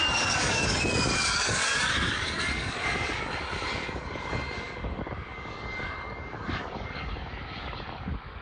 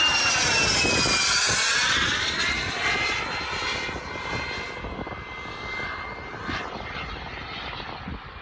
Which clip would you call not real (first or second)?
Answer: first